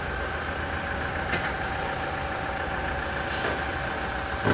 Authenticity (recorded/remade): recorded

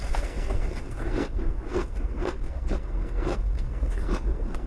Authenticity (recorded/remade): remade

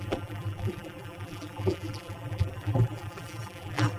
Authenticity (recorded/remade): remade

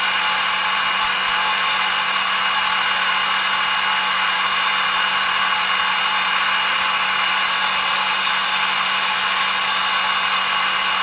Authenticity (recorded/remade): recorded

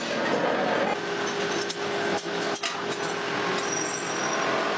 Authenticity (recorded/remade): recorded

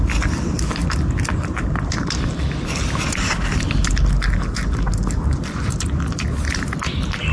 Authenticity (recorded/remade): recorded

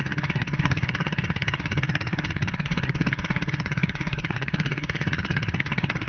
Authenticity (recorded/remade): remade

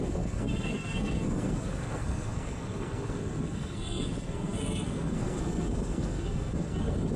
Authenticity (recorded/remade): remade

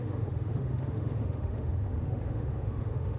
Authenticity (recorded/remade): remade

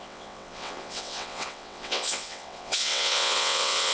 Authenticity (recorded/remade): remade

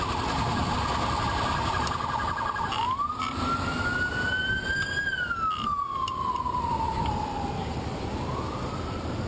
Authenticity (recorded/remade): recorded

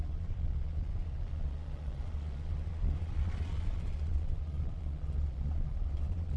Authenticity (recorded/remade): remade